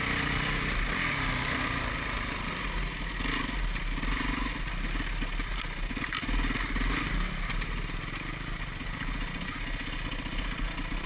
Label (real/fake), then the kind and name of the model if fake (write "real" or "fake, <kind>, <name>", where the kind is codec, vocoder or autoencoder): real